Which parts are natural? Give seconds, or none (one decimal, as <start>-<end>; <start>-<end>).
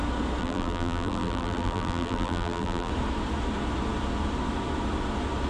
0.0-0.4; 2.9-5.5